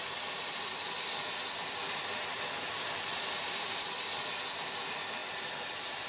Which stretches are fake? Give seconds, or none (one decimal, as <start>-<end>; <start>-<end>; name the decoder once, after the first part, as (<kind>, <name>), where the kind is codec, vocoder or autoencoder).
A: 0.0-6.1 (vocoder, BigVGAN v2)